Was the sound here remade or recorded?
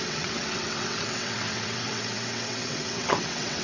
remade